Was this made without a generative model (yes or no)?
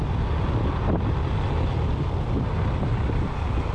yes